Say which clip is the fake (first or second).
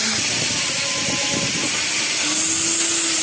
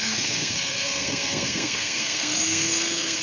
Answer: second